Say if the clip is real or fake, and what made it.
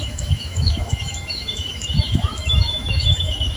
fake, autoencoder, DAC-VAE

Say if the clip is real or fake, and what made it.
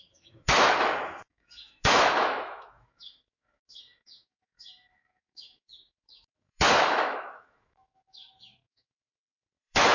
fake, autoencoder, DAC-VAE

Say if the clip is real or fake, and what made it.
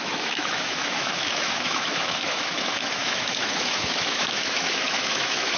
fake, autoencoder, DAC-VAE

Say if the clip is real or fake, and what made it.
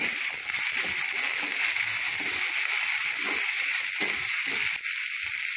real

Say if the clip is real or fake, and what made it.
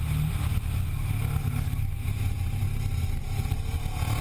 real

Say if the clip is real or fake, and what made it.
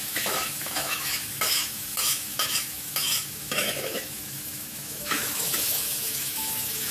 fake, autoencoder, DAC-VAE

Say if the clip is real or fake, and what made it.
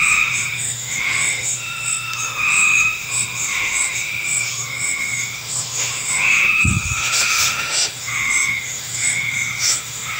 fake, autoencoder, DAC-VAE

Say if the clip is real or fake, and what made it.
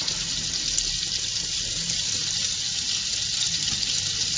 real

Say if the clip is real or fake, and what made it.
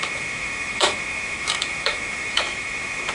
fake, autoencoder, DAC-VAE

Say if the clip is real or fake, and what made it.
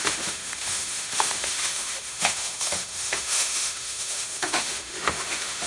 fake, autoencoder, DAC-VAE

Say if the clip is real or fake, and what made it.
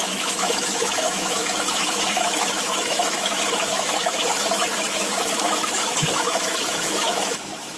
fake, autoencoder, DAC-VAE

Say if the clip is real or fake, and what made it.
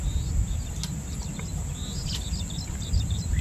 real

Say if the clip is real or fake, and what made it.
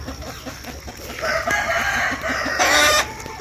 real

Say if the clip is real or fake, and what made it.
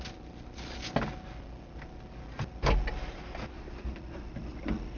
real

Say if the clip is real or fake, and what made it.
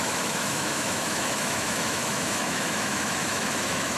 fake, autoencoder, DAC-VAE